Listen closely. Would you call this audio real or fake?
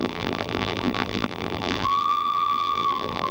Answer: fake